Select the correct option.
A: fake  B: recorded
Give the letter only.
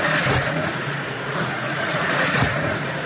A